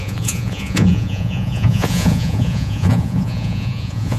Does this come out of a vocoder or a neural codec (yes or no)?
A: yes